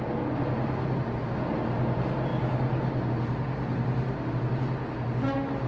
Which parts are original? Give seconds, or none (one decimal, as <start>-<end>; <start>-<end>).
0.0-5.7